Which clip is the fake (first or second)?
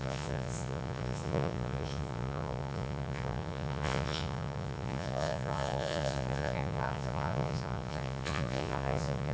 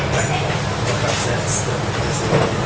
first